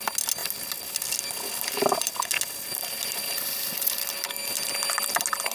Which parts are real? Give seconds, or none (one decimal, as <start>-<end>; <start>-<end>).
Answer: 0.0-5.5